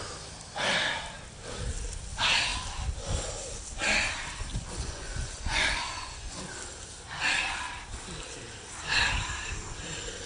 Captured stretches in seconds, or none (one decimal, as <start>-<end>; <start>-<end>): 0.0-4.5; 6.5-10.3